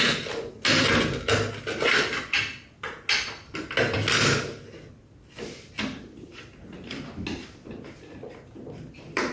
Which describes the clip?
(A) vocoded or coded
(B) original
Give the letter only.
B